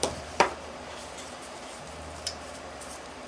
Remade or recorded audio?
remade